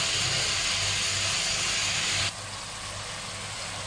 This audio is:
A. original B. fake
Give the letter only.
A